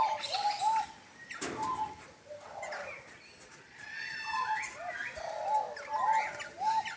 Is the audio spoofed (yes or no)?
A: no